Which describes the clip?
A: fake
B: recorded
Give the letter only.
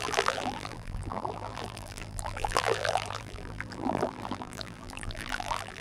A